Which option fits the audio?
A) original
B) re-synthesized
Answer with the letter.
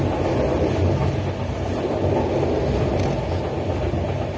A